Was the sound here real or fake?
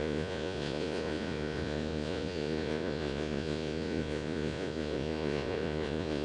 fake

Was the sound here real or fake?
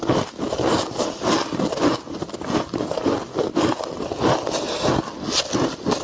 real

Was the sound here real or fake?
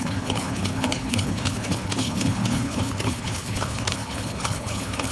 fake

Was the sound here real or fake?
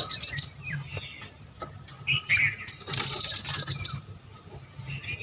real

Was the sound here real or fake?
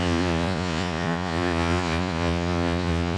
fake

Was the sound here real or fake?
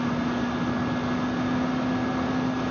real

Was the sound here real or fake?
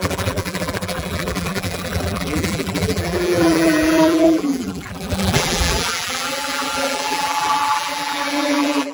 fake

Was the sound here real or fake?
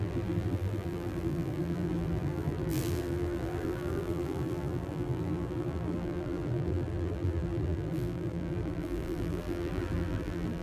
fake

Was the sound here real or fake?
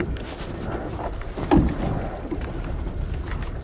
real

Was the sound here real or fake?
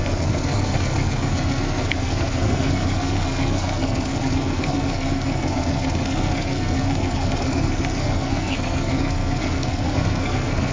fake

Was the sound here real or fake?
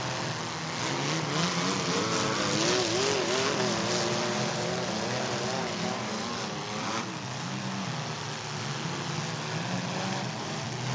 real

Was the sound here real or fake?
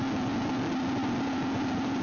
real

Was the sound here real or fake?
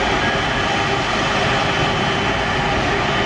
real